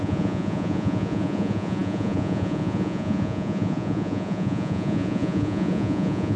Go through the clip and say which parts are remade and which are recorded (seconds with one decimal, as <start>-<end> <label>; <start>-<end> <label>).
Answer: 0.0-6.4 remade